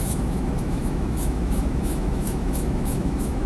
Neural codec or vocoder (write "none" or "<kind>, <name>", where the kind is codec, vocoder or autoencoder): autoencoder, DAC-VAE